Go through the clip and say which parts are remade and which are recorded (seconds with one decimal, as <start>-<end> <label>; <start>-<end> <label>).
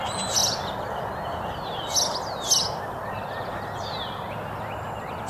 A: 0.0-5.3 recorded